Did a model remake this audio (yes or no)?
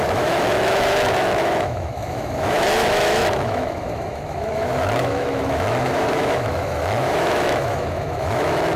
yes